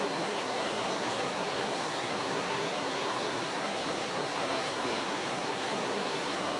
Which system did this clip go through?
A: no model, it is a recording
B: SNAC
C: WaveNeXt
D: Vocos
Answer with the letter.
B